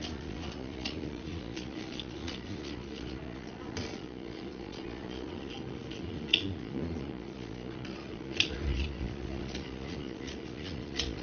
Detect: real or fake fake